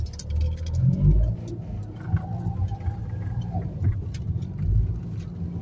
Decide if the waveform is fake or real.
real